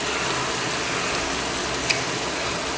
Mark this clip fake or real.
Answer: real